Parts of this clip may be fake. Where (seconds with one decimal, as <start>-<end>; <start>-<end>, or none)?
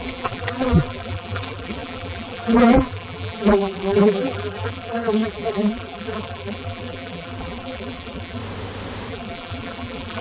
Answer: 0.0-8.4; 9.1-10.2